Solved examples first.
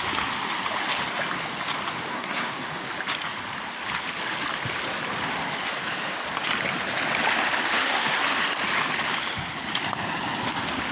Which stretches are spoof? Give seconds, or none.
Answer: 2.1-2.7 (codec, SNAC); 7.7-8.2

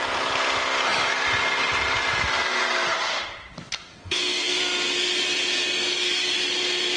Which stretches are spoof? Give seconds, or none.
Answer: 3.9-4.6 (codec, SNAC)

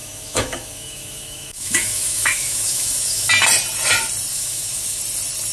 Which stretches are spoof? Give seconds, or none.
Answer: 0.0-3.3 (autoencoder, DAC-VAE); 4.3-5.0

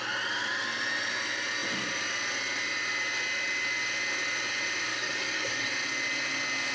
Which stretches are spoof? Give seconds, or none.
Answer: 4.9-5.7 (codec, DAC)

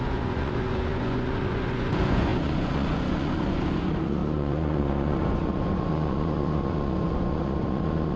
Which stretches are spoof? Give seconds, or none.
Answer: 0.0-8.2 (vocoder, Vocos)

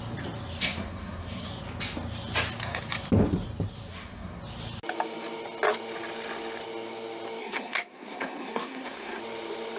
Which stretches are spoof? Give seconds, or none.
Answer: 0.6-1.5 (codec, SNAC); 3.9-4.4; 7.4-9.2

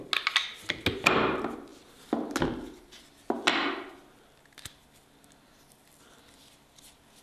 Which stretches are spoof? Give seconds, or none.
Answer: none

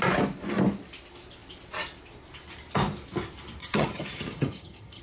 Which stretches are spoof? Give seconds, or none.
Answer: 3.6-5.0 (vocoder, HiFi-GAN)